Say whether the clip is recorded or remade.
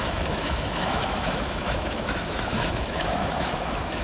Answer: remade